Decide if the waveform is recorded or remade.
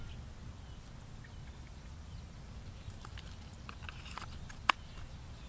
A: recorded